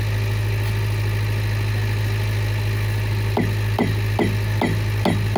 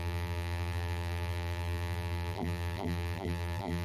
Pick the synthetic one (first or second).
second